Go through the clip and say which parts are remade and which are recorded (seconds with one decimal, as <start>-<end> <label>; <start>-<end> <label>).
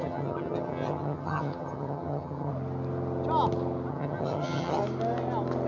0.0-2.5 remade; 2.5-3.9 recorded; 3.9-4.8 remade; 4.8-5.7 recorded